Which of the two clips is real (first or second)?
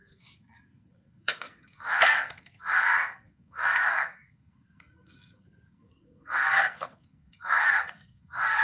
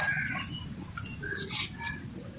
second